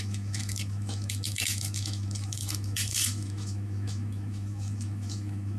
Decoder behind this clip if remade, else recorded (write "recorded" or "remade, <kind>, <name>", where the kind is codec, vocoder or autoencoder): remade, autoencoder, DAC-VAE